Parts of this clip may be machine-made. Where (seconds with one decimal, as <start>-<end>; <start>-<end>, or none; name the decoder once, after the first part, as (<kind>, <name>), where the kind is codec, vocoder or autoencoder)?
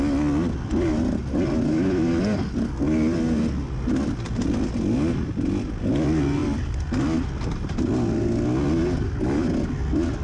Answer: none